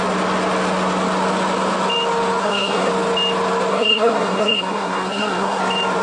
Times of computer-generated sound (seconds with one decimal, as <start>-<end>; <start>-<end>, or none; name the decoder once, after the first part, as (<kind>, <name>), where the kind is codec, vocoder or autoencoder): 2.4-2.9 (codec, SNAC); 3.7-5.6